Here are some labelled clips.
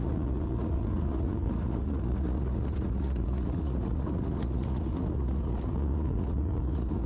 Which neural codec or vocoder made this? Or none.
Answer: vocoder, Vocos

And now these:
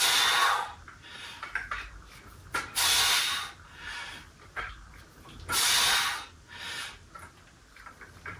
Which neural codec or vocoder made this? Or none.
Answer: none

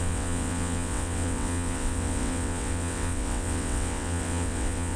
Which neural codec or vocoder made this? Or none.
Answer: vocoder, WaveNeXt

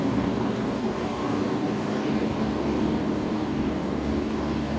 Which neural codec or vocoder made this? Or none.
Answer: codec, DAC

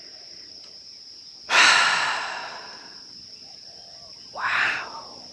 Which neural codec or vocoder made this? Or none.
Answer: none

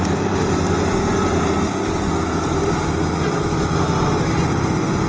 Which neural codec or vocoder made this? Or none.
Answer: none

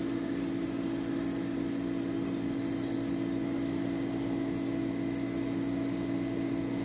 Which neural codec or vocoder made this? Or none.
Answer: none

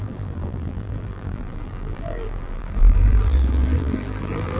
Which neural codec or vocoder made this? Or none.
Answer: vocoder, BigVGAN v2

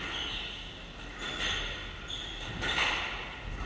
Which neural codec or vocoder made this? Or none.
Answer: none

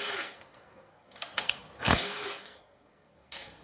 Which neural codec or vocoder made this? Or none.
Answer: codec, SNAC